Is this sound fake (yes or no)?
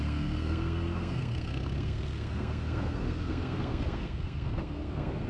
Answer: yes